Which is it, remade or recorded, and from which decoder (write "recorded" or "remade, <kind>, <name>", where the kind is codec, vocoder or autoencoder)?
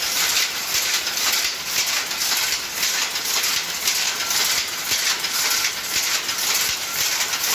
recorded